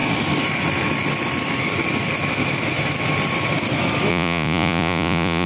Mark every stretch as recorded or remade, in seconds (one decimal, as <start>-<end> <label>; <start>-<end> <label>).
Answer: 0.0-4.1 recorded; 4.1-5.5 remade